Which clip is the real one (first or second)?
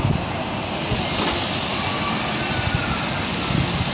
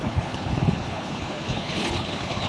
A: first